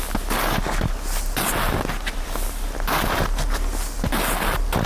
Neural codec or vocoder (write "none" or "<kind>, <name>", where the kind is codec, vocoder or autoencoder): none